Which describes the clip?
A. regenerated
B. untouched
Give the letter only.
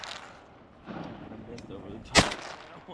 B